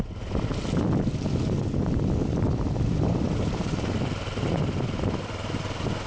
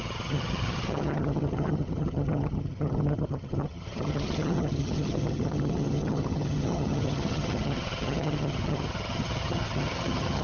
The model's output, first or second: second